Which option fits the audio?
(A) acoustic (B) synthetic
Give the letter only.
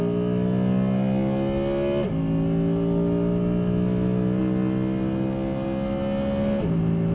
A